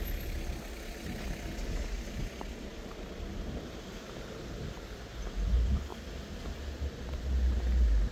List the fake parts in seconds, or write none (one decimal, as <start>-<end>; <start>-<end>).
none